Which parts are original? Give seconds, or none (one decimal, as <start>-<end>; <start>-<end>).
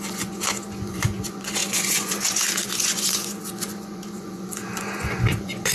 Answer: none